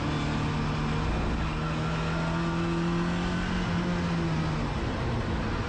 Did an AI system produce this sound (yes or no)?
no